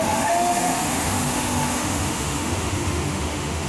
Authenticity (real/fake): fake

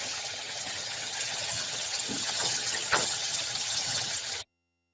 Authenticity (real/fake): fake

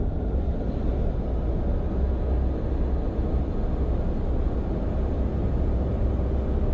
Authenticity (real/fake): real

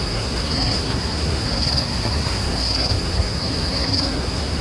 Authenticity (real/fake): fake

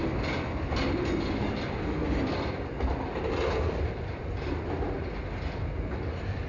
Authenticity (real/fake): real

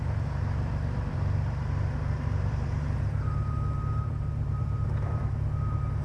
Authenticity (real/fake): fake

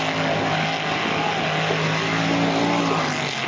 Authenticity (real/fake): real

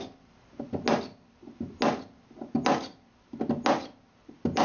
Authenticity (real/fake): real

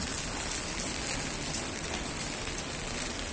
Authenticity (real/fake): real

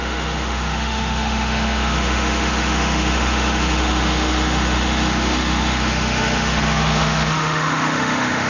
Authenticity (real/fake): fake